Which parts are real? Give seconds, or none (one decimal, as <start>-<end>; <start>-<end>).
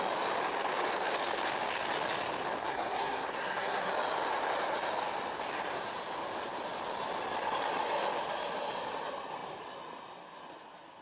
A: 0.0-2.6; 3.9-11.0